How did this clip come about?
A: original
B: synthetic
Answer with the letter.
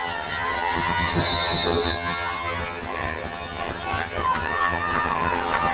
B